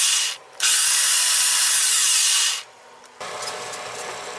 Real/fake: fake